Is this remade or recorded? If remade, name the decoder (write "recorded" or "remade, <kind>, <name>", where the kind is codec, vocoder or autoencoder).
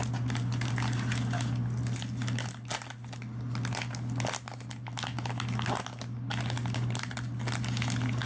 recorded